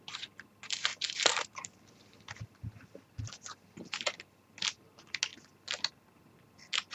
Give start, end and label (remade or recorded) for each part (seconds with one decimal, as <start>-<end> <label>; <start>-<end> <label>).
0.0-6.9 recorded